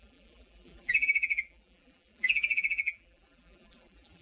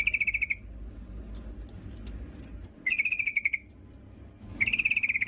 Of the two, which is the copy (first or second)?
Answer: first